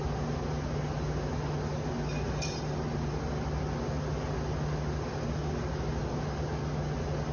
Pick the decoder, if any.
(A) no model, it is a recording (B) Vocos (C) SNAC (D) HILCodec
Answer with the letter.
A